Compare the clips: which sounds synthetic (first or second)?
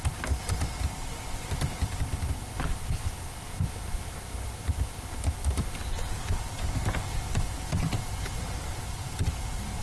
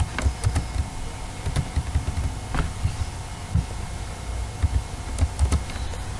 first